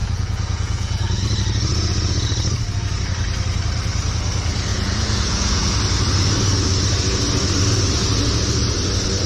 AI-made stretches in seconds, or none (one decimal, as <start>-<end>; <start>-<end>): 0.0-1.2; 1.7-2.3; 4.7-5.8